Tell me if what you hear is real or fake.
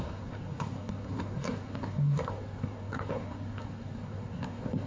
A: fake